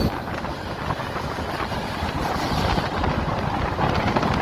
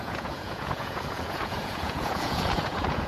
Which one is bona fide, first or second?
first